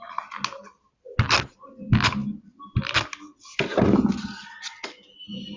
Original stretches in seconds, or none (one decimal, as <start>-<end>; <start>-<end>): 0.0-5.6